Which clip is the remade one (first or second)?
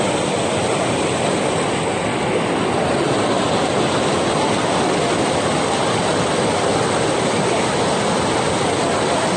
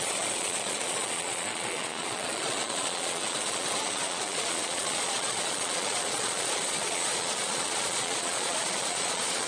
second